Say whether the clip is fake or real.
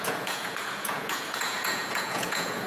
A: fake